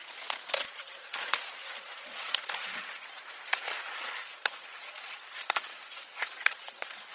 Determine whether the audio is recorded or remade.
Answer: remade